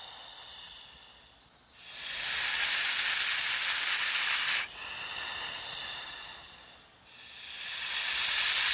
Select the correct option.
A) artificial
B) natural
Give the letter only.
B